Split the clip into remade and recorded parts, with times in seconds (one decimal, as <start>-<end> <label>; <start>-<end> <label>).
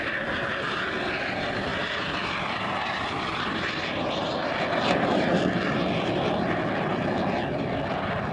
0.0-1.7 recorded; 1.7-6.7 remade; 6.7-8.3 recorded